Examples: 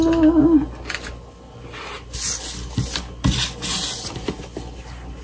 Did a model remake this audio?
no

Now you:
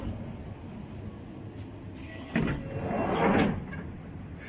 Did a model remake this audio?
no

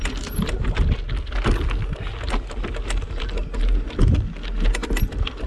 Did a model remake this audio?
no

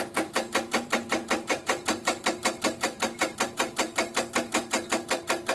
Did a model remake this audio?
yes